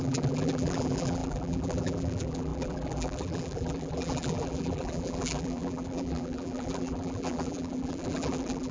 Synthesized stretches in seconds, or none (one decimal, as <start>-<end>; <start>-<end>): 0.0-8.7